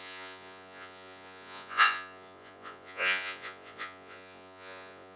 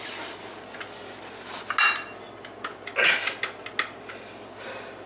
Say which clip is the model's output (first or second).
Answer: first